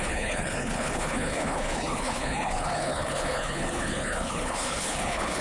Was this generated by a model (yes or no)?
yes